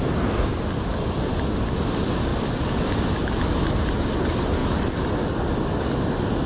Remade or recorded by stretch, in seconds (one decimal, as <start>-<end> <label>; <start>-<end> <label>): 0.0-6.5 recorded